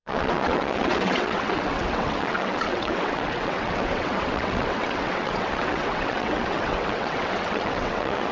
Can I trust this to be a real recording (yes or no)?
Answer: no